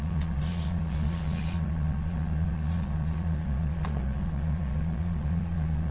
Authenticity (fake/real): fake